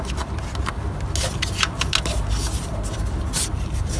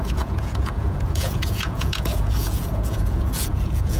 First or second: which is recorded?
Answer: first